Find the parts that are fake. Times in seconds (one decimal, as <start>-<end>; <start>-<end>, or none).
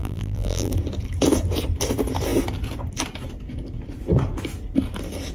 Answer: 0.0-0.7